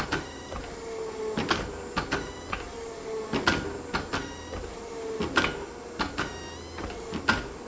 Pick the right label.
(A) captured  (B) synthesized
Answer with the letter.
A